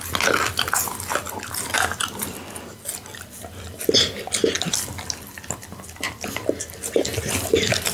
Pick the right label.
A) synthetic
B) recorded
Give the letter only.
B